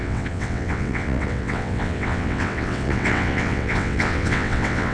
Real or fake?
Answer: fake